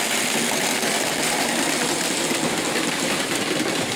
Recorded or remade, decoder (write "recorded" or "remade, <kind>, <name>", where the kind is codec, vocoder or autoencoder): remade, vocoder, BigVGAN v2